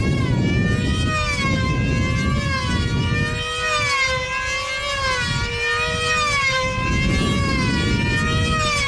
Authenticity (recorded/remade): recorded